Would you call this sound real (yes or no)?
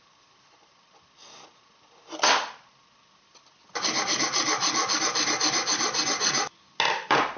yes